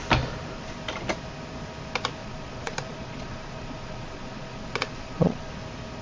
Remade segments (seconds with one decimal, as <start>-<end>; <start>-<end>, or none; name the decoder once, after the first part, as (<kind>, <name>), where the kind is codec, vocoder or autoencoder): 2.2-5.5 (vocoder, Vocos)